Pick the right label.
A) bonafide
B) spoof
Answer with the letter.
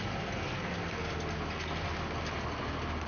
A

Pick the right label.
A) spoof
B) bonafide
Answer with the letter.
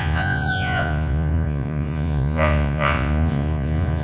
A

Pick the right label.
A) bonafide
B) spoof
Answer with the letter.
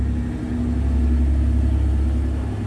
A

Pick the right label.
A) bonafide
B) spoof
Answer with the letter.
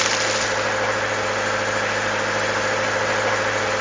A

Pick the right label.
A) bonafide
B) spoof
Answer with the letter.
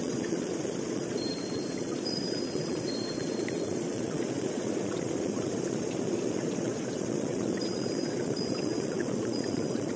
B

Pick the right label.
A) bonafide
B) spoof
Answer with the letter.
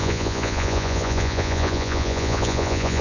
B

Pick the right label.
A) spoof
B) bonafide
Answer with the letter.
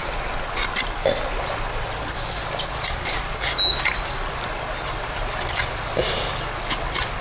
B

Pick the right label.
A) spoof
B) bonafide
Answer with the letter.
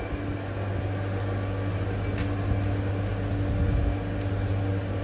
B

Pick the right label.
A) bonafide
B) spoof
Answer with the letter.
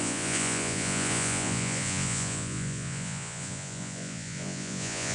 B